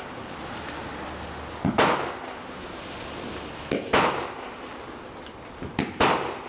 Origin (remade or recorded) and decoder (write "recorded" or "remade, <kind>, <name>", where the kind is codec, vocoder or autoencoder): recorded